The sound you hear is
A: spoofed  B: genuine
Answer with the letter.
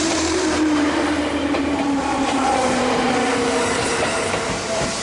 A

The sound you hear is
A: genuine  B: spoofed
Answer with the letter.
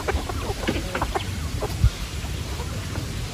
A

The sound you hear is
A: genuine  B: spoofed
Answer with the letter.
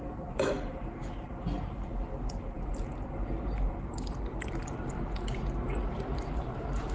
B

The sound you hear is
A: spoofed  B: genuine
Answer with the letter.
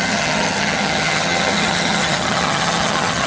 A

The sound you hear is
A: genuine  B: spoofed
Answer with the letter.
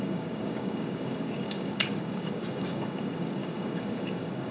B